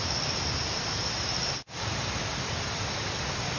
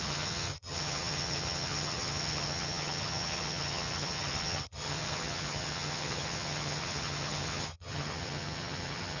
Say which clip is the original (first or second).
first